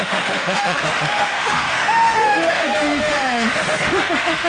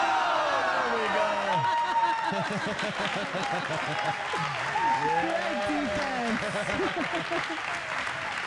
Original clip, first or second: second